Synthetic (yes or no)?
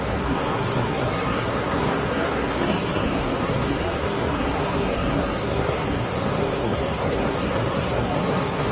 yes